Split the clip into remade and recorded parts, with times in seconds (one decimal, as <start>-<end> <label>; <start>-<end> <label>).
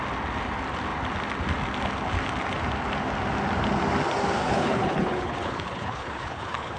0.0-4.4 recorded; 4.4-6.8 remade